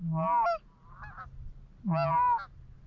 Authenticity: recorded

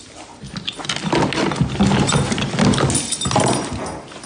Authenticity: recorded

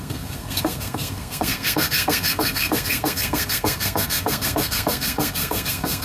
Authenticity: remade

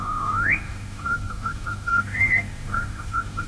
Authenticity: remade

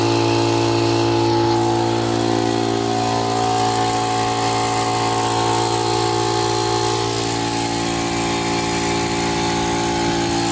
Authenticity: recorded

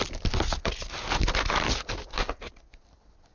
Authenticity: recorded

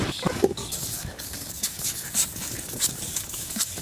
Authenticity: remade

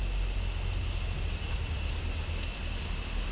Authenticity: recorded